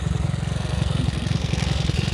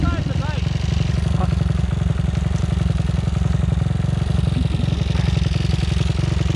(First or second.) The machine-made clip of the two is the first